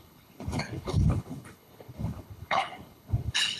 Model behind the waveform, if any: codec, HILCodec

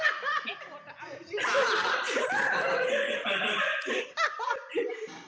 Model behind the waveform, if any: vocoder, BigVGAN v2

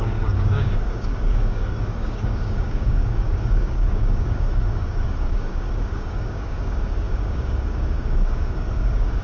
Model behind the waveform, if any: codec, DAC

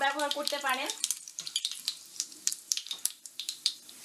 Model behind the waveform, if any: vocoder, BigVGAN v2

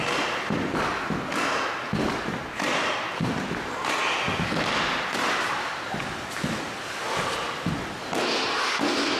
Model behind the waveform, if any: none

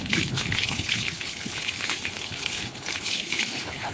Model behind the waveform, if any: codec, HILCodec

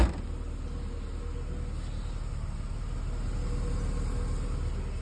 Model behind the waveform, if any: none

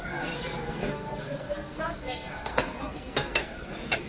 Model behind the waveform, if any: codec, SNAC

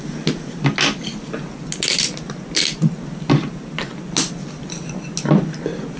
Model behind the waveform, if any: none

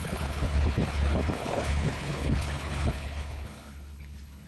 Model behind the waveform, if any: codec, HILCodec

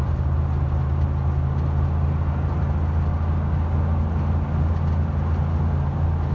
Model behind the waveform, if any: none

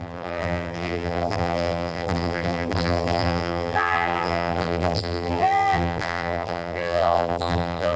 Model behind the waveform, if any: vocoder, BigVGAN v2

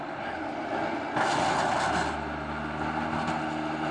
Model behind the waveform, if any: none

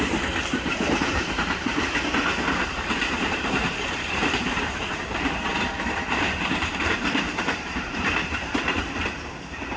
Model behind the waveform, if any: vocoder, BigVGAN v2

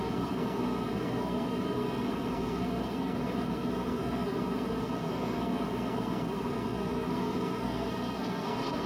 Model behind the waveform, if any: codec, SNAC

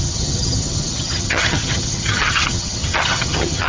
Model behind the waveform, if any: vocoder, HiFi-GAN